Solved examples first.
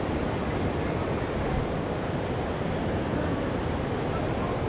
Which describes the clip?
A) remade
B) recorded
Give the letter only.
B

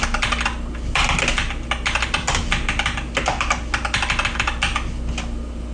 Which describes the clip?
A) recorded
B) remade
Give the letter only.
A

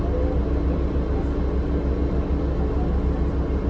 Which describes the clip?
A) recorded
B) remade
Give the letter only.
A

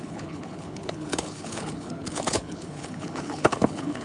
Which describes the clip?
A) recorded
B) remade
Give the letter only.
B